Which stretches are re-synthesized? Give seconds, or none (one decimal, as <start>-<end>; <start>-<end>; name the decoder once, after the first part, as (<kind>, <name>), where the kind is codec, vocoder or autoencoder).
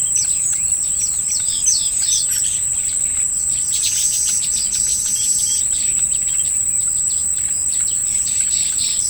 0.0-3.4 (vocoder, BigVGAN v2); 4.9-5.6